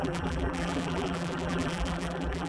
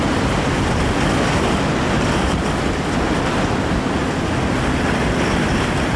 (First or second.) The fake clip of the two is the first